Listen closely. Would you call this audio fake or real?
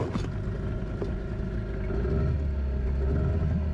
real